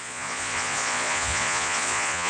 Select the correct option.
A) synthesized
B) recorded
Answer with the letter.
A